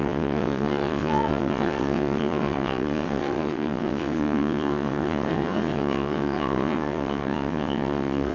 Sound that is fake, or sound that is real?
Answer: fake